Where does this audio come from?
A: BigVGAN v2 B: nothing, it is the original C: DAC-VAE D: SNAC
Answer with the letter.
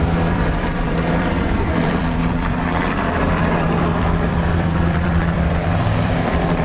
A